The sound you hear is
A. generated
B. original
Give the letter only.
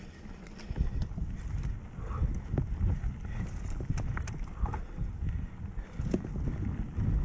B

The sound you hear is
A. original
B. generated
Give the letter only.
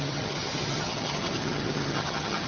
B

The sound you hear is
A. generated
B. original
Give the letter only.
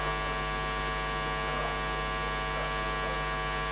B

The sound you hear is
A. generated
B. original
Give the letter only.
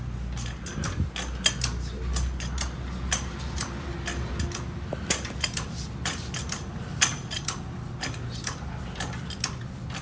B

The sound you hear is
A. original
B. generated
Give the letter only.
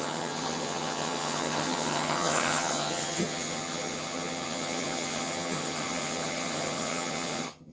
B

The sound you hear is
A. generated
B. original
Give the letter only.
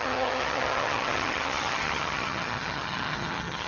A